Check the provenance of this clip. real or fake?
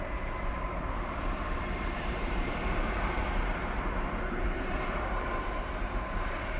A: fake